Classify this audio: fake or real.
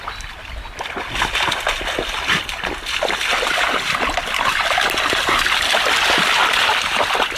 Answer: real